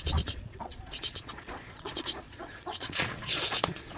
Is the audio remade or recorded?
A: remade